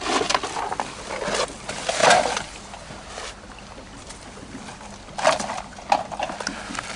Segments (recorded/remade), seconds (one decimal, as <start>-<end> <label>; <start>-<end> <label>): 0.0-7.0 recorded